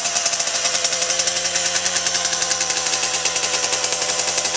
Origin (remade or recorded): remade